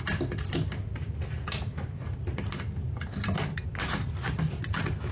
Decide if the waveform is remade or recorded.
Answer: recorded